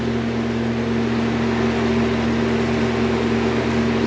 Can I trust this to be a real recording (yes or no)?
yes